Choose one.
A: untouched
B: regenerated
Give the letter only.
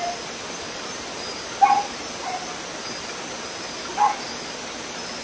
A